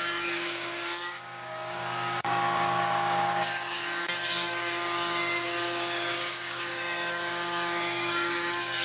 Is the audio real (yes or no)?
no